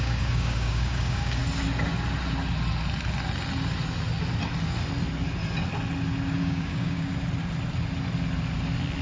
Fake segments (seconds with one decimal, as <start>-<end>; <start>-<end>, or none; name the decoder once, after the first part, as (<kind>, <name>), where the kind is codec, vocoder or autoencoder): 0.0-1.4 (codec, DAC); 6.4-7.1